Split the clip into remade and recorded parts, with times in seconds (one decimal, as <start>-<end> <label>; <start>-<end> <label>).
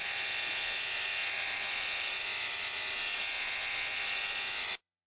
0.0-5.1 remade